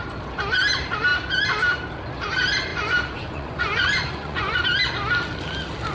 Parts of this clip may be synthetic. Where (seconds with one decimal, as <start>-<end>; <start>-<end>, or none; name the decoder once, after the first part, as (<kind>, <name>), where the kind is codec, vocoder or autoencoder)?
2.7-4.6 (vocoder, Vocos)